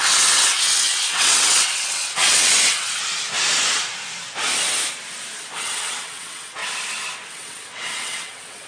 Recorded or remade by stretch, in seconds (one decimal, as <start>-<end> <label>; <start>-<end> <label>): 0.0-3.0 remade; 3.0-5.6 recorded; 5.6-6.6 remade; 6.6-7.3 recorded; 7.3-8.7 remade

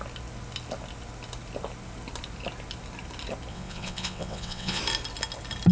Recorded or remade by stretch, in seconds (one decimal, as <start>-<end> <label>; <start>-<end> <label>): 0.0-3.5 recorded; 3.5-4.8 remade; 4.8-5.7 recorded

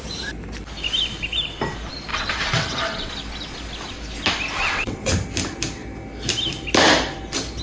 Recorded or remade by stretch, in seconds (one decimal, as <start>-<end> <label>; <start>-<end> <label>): 0.0-2.1 recorded; 2.1-3.1 remade; 3.1-4.5 recorded; 4.5-5.1 remade; 5.1-7.6 recorded

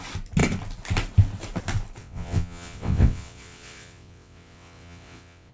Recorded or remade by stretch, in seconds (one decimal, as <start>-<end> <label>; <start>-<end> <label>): 0.0-2.0 recorded; 2.0-5.5 remade

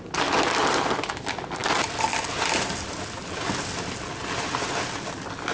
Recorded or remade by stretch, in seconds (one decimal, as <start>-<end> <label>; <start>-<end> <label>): 0.0-5.5 recorded

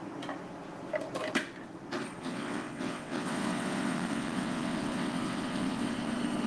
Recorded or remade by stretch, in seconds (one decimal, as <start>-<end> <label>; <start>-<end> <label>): 0.0-2.2 recorded; 2.2-6.1 remade; 6.1-6.5 recorded

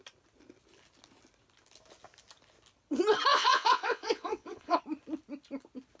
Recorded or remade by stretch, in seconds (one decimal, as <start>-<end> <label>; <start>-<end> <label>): 0.0-3.3 recorded; 3.3-4.8 remade; 4.8-6.0 recorded

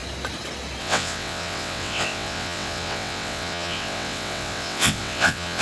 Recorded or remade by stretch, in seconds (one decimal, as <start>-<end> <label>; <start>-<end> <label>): 0.0-0.8 recorded; 0.8-5.6 remade